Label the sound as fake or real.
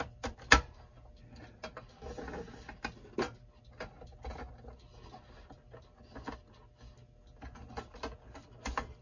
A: real